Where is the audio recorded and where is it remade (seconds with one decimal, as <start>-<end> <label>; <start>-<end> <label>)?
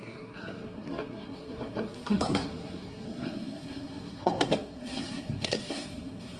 0.0-6.4 remade